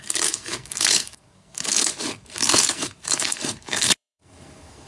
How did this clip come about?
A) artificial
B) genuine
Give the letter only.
A